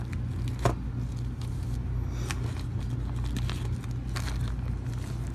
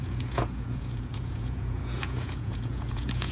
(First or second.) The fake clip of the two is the second